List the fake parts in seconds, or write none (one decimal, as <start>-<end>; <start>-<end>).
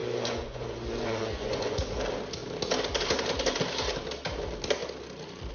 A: 0.0-1.8